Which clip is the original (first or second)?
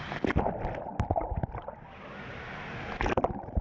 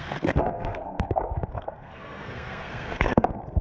first